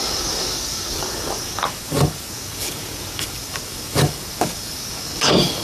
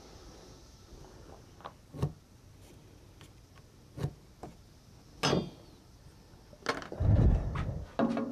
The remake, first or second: first